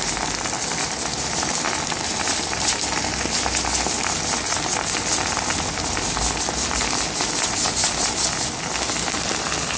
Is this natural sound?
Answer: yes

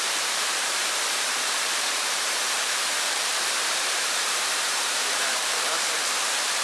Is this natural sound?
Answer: no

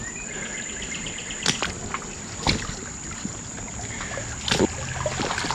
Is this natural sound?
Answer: yes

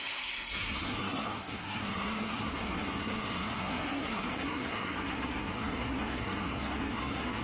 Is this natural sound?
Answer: no